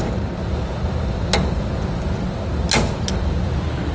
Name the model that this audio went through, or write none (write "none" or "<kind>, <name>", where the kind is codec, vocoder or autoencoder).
none